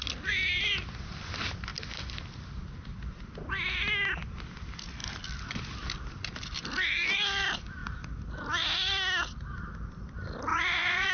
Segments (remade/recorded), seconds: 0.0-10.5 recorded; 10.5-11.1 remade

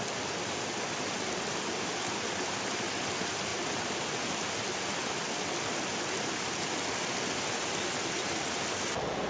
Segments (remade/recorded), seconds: 0.0-9.3 recorded

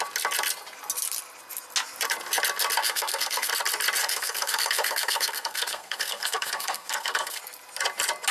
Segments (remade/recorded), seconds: 0.0-2.8 recorded; 2.8-3.5 remade; 3.5-4.0 recorded; 4.0-7.4 remade; 7.4-8.3 recorded

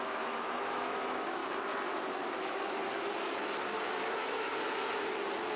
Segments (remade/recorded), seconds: 0.0-1.4 remade; 1.4-2.4 recorded; 2.4-2.8 remade; 2.8-4.1 recorded; 4.1-4.5 remade; 4.5-5.6 recorded

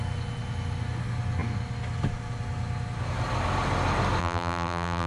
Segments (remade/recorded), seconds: 0.0-4.2 recorded; 4.2-5.1 remade

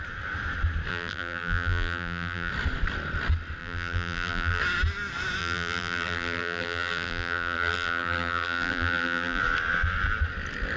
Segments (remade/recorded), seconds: 0.0-0.9 recorded; 0.9-2.5 remade; 2.5-3.6 recorded; 3.6-4.6 remade; 4.6-5.4 recorded; 5.4-9.4 remade; 9.4-10.8 recorded

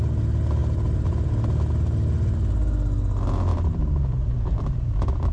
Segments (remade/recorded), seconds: 0.0-3.5 recorded; 3.5-5.3 remade